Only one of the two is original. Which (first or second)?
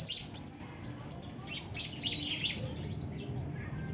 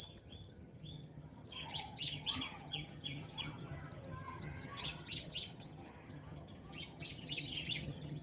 first